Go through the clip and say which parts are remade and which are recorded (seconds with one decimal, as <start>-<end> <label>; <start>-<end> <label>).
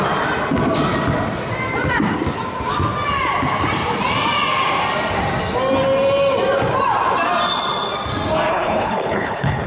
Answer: 0.0-8.5 recorded; 8.5-9.7 remade